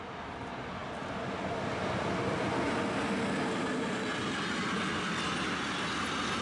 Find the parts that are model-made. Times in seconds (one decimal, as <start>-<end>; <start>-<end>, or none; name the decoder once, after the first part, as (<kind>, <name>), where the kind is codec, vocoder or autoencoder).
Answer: none